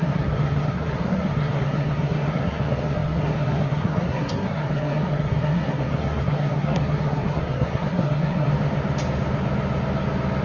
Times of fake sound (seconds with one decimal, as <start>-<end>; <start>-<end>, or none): 0.0-8.5